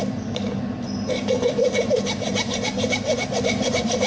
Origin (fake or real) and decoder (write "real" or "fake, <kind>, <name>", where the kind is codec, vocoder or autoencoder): real